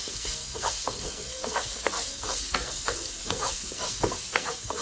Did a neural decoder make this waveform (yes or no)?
yes